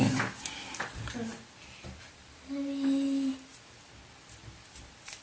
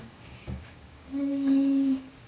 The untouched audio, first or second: first